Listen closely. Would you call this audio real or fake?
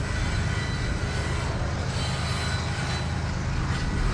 real